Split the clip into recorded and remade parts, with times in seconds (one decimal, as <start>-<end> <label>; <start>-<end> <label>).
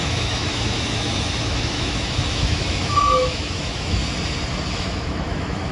0.0-4.0 remade; 4.0-4.7 recorded; 4.7-5.7 remade